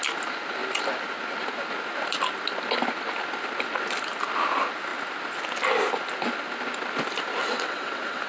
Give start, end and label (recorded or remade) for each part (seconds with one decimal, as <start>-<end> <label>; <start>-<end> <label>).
0.0-7.4 recorded; 7.4-8.3 remade